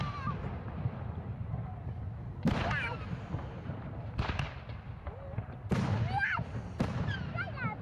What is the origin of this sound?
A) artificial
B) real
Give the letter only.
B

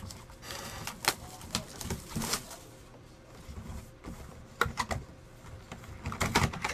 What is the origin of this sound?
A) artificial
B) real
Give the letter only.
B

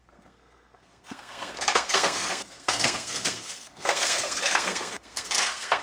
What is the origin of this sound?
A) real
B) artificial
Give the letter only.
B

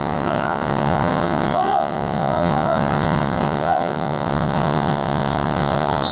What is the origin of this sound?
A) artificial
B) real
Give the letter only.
A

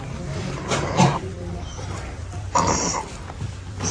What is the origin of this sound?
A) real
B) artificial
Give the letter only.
B